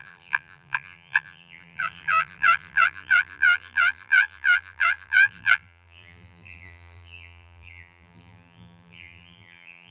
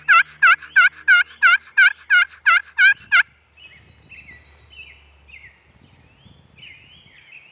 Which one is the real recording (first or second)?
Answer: second